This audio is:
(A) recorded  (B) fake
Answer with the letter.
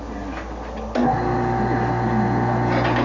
A